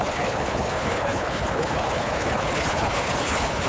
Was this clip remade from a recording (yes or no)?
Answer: yes